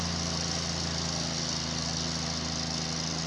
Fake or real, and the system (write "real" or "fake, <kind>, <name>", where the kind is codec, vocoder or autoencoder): real